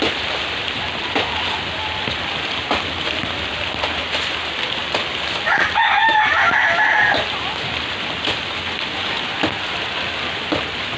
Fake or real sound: real